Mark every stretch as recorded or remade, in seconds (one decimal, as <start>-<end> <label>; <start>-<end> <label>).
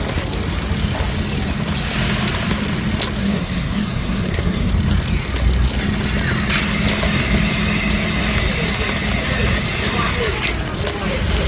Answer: 0.0-3.2 recorded; 3.2-4.7 remade; 4.7-11.5 recorded